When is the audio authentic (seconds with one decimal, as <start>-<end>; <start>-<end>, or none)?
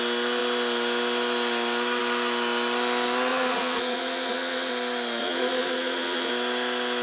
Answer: 0.0-3.3; 4.7-5.2; 6.3-7.0